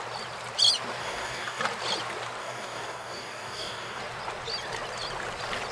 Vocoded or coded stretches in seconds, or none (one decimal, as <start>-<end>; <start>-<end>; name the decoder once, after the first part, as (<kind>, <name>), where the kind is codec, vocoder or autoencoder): 1.0-1.6 (codec, DAC); 2.4-4.0